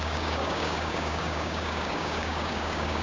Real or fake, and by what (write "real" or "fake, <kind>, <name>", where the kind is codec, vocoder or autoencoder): fake, codec, DAC